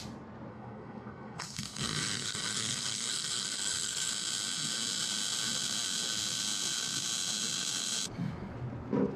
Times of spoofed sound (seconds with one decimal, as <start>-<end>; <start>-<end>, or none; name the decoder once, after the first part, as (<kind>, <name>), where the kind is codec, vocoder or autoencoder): 0.5-4.1 (codec, SNAC)